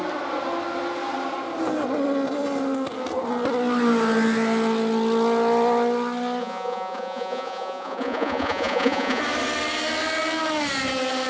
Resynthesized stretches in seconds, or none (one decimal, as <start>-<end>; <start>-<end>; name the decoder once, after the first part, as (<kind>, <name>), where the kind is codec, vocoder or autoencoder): 6.4-9.2 (vocoder, Vocos)